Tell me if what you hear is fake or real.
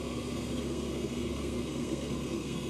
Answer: fake